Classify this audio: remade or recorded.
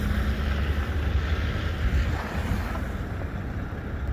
recorded